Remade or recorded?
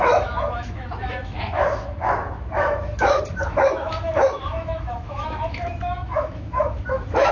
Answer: remade